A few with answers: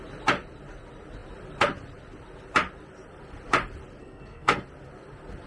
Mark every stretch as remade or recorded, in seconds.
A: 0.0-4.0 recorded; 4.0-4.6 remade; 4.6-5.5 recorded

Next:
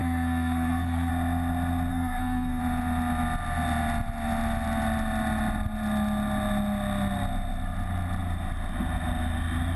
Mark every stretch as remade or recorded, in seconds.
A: 0.0-1.1 remade; 1.1-1.9 recorded; 1.9-2.6 remade; 2.6-9.8 recorded

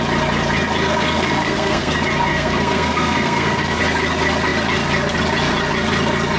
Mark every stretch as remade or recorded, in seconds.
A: 0.0-0.8 recorded; 0.8-1.9 remade; 1.9-2.3 recorded; 2.3-3.8 remade; 3.8-6.4 recorded